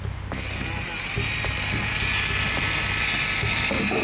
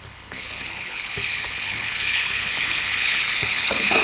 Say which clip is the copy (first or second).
second